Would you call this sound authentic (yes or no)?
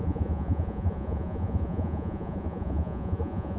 no